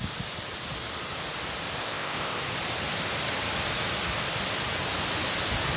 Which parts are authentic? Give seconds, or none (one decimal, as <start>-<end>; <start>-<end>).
0.0-1.8; 2.4-5.8